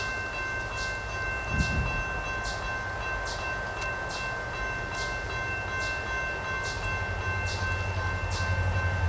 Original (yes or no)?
yes